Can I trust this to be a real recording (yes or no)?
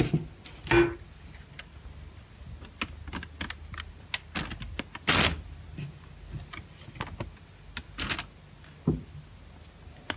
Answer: yes